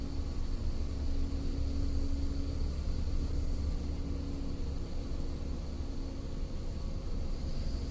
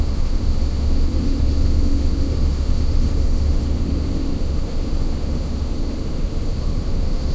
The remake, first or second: second